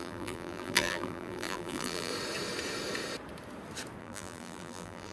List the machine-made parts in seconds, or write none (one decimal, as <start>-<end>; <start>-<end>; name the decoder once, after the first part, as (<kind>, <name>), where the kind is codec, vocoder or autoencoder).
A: 0.0-2.1 (vocoder, BigVGAN v2); 4.0-5.1